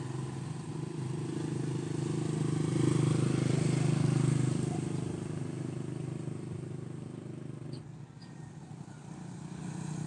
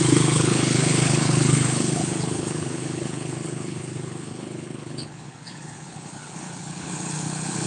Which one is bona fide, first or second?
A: first